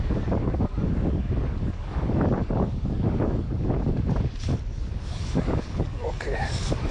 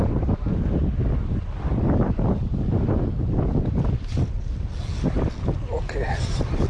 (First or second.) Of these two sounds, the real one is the second